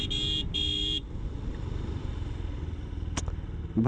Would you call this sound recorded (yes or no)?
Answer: yes